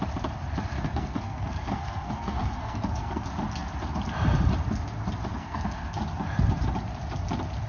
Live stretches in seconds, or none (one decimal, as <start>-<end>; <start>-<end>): 0.0-0.7; 3.2-5.3; 6.0-7.7